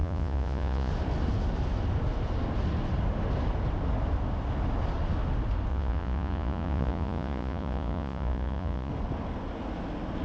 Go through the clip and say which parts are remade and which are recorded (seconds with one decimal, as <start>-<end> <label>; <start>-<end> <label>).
0.0-0.9 remade; 0.9-5.7 recorded; 5.7-8.9 remade; 8.9-10.2 recorded